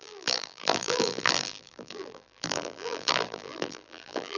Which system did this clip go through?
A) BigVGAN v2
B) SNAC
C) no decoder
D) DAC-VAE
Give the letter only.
A